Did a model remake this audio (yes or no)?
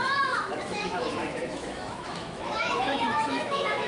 yes